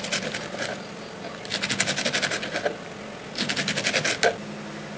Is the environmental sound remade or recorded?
recorded